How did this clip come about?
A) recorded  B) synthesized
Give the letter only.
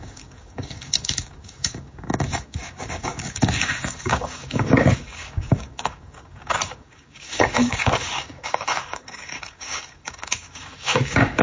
B